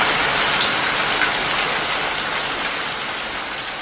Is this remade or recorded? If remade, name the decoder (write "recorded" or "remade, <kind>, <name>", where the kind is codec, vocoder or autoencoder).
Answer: recorded